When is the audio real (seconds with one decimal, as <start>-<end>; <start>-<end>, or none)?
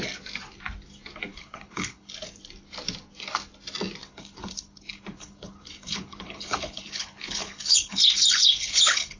0.0-1.3; 2.1-4.0